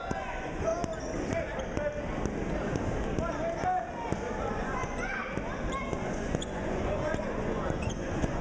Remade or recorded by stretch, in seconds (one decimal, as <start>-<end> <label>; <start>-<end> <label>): 0.0-0.7 remade; 0.7-4.5 recorded; 4.5-5.2 remade; 5.2-6.0 recorded; 6.0-8.4 remade